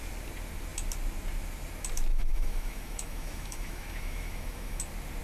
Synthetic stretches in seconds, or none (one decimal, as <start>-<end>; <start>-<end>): 2.1-4.8

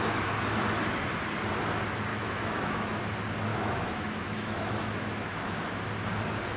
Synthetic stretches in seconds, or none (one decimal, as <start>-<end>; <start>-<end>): 2.1-3.0; 3.5-5.7